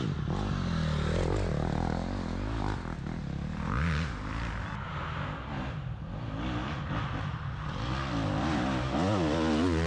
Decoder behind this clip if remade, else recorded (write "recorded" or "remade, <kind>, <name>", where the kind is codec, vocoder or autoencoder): recorded